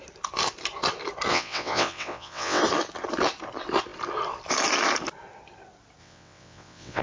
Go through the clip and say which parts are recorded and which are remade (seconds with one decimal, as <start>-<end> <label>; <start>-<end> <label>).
0.0-1.3 recorded; 1.3-2.6 remade; 2.6-6.0 recorded; 6.0-7.0 remade